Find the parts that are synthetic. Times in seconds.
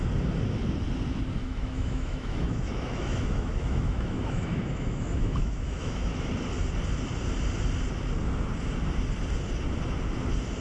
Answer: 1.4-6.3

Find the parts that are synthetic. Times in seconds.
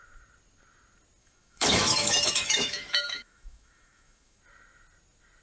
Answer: 1.2-4.4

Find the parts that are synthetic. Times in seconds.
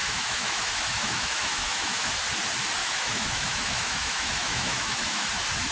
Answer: 0.0-2.1; 2.8-5.3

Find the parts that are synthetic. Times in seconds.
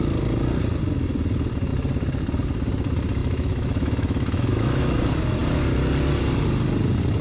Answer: 3.2-5.0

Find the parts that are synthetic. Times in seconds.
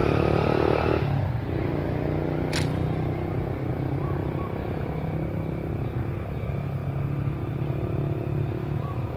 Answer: 8.6-9.2